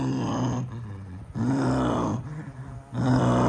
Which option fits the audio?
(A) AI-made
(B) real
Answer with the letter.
B